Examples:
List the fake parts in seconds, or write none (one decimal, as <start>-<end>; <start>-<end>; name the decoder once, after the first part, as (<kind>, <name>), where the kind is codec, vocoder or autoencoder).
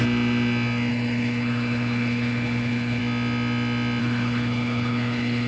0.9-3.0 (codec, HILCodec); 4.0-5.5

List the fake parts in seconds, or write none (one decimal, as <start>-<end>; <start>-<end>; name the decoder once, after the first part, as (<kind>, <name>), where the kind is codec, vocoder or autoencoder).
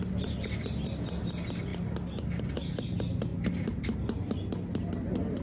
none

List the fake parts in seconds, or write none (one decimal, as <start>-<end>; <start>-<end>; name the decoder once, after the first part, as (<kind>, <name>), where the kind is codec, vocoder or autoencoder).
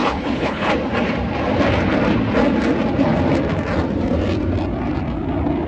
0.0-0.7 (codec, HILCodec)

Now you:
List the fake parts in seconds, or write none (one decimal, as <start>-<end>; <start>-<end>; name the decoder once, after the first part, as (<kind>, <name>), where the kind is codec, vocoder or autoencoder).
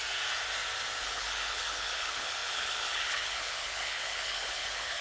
1.0-5.0 (codec, HILCodec)